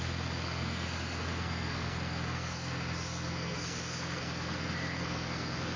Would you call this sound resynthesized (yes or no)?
yes